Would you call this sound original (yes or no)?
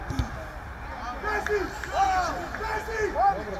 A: yes